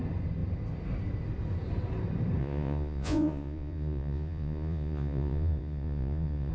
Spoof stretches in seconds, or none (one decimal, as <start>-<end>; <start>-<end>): 2.4-6.5